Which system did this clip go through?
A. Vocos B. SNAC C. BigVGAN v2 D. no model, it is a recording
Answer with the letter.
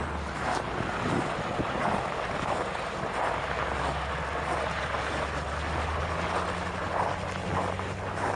D